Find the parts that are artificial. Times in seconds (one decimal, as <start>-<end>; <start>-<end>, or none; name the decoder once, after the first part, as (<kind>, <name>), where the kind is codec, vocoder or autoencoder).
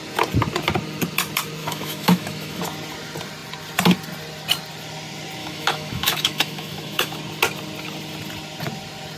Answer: 1.6-2.6 (autoencoder, DAC-VAE); 5.4-7.2